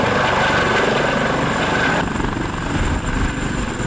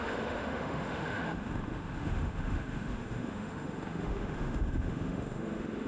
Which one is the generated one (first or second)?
second